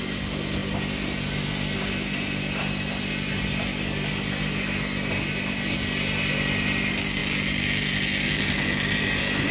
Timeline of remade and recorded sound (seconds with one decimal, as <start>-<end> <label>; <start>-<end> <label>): 0.0-9.5 recorded